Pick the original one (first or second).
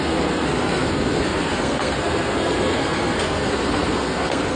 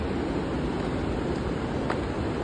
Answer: second